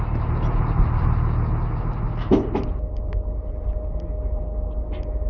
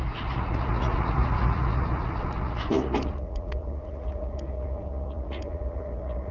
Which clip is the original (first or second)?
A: first